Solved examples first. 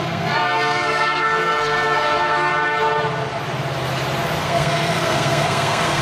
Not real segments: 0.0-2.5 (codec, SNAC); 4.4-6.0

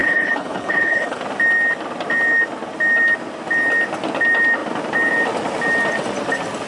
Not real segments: 0.0-1.2 (codec, HILCodec)

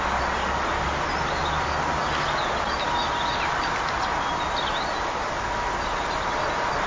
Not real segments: none

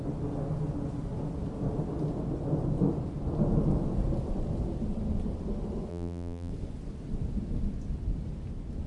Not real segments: 5.9-6.5 (vocoder, BigVGAN v2)

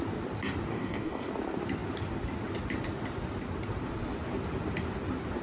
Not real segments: 0.7-1.3 (codec, DAC)

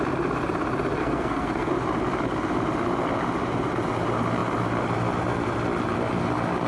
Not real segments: 1.0-1.7 (codec, SNAC)

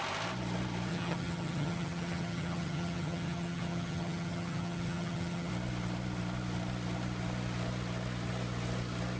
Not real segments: 0.9-5.5 (vocoder, HiFi-GAN)